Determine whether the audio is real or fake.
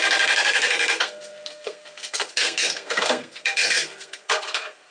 fake